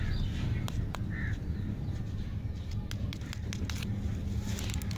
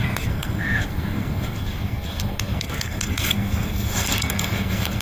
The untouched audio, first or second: first